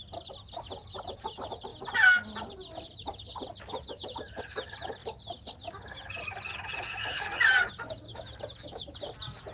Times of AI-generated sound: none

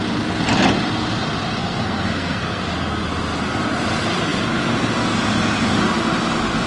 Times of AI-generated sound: 1.6-2.6 (codec, SNAC)

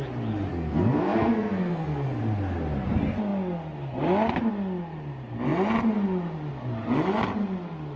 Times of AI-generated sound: 0.5-2.2 (codec, SNAC)

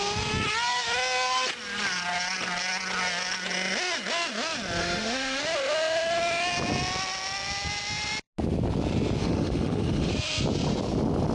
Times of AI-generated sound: 4.8-5.4 (autoencoder, DAC-VAE); 9.2-10.1